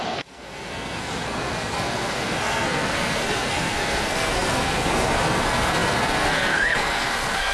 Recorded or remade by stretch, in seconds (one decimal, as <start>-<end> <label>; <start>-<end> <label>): 0.0-7.5 remade